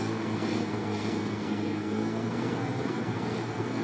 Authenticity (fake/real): fake